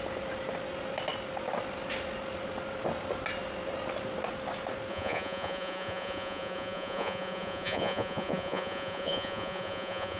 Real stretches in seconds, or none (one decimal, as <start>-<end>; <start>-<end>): 0.0-4.9